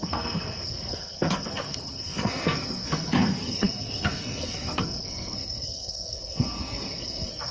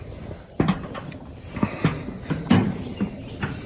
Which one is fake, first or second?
first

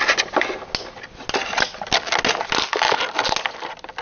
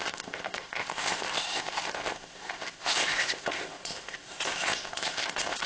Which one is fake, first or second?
second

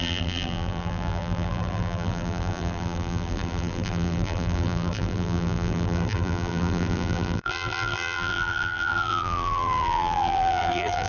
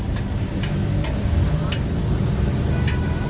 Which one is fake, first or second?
first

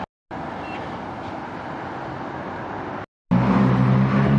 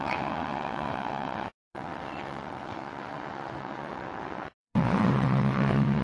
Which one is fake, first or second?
second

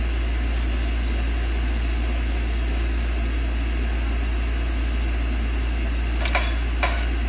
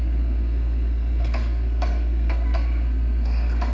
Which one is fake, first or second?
second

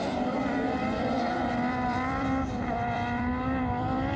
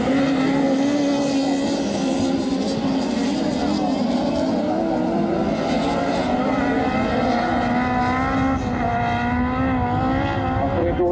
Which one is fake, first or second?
first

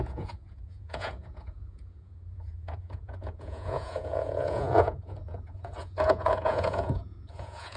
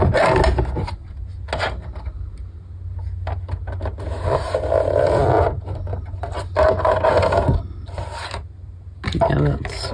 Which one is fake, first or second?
first